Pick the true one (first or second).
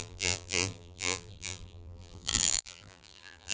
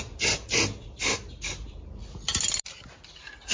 second